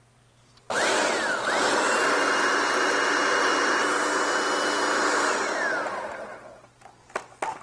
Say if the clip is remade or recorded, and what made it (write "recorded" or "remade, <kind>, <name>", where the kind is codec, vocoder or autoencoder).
recorded